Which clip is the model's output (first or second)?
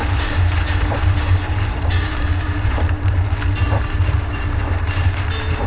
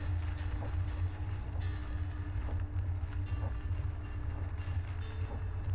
first